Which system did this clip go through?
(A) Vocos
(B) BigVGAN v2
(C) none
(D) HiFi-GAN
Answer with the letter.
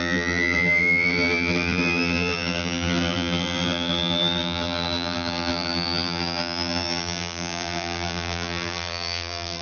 B